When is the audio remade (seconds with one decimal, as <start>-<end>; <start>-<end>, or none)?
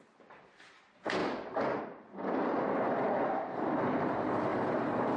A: none